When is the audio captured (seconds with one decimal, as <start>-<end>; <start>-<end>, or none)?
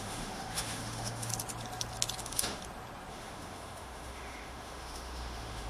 1.3-2.2; 2.6-3.1